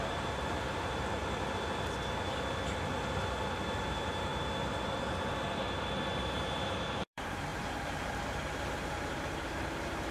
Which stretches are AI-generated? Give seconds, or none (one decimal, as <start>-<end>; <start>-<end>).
0.0-1.2; 3.8-4.3; 6.2-10.1

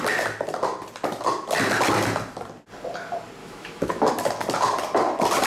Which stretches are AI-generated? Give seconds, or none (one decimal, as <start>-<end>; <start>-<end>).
3.4-4.1

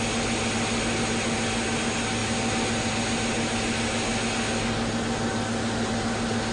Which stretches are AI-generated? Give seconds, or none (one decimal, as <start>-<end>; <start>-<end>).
none

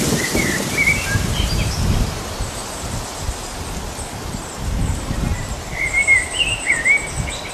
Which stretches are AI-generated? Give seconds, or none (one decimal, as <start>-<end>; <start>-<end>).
0.0-2.6; 4.4-7.5

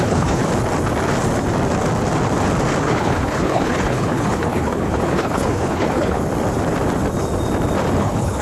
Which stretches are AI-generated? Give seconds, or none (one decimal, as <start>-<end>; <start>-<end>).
0.0-0.4; 2.8-6.2; 8.0-8.4